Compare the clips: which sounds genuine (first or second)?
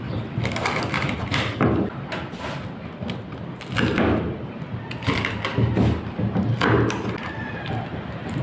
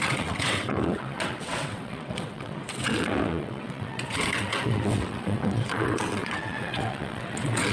first